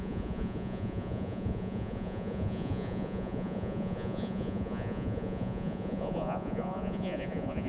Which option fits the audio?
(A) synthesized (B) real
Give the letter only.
A